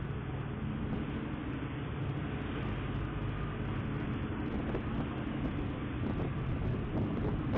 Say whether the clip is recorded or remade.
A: recorded